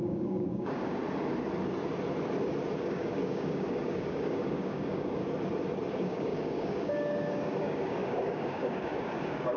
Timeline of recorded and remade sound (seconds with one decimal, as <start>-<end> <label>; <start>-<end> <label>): 0.0-1.0 remade; 1.0-2.8 recorded; 2.8-5.2 remade; 5.2-5.9 recorded; 5.9-9.6 remade